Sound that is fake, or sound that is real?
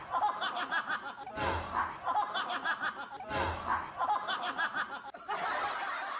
real